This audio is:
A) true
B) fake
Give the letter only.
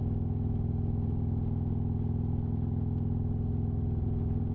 A